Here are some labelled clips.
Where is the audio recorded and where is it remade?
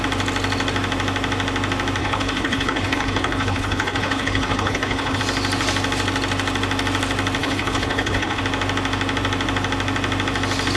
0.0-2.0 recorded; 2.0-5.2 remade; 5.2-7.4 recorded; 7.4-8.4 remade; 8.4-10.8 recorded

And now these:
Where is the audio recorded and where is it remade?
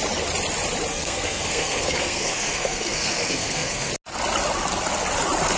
0.0-0.9 recorded; 0.9-3.9 remade; 3.9-5.6 recorded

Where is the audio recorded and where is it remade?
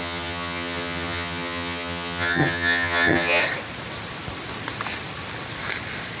0.0-3.4 remade; 3.4-6.2 recorded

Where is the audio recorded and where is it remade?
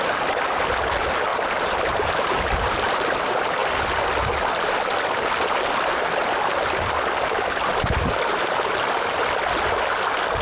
0.0-1.3 recorded; 1.3-3.2 remade; 3.2-7.7 recorded; 7.7-8.4 remade; 8.4-10.4 recorded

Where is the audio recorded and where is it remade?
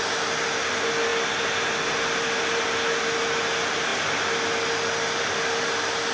0.0-6.1 recorded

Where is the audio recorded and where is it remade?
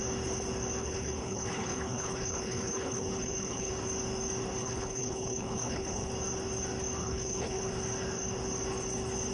0.0-0.8 recorded; 0.8-3.7 remade; 3.7-4.6 recorded; 4.6-6.1 remade; 6.1-7.0 recorded; 7.0-7.7 remade; 7.7-9.3 recorded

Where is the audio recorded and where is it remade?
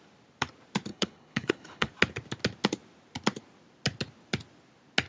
0.0-0.9 recorded; 0.9-1.9 remade; 1.9-5.1 recorded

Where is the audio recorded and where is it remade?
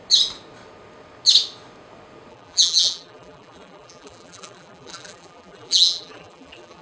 0.0-2.3 recorded; 2.3-6.8 remade